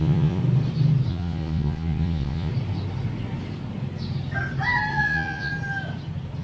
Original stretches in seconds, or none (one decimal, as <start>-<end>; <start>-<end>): 0.4-1.1; 2.5-4.9; 5.5-6.4